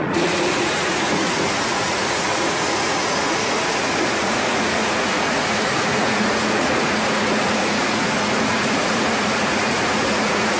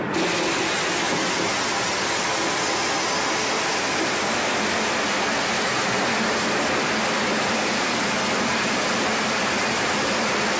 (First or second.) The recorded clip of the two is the second